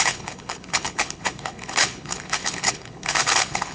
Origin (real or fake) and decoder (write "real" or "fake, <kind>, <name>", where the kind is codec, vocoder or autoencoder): fake, codec, HILCodec